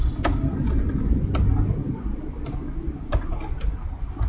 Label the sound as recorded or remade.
recorded